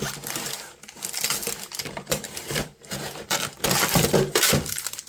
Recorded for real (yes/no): no